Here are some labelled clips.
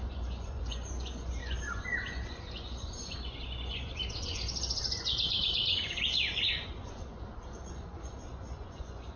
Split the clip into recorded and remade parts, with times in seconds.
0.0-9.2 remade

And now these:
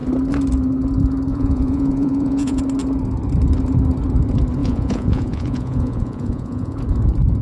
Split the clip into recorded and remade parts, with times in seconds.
0.0-1.3 recorded; 1.3-2.6 remade; 2.6-4.6 recorded; 4.6-6.8 remade; 6.8-7.4 recorded